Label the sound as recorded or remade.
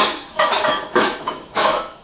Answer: remade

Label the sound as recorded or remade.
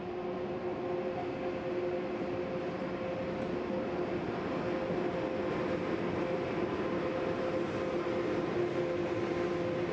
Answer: recorded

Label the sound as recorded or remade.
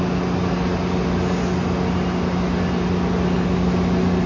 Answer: recorded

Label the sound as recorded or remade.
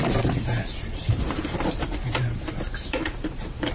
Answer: remade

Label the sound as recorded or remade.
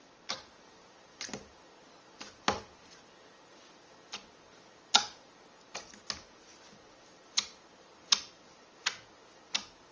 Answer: recorded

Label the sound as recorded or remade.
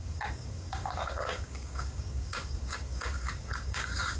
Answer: remade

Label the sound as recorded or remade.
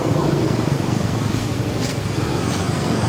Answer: remade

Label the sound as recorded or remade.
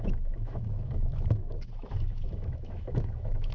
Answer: remade